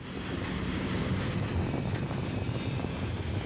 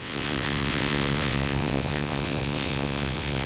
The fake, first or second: second